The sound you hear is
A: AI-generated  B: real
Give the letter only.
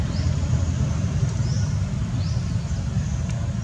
B